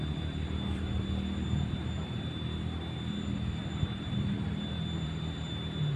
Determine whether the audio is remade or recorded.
remade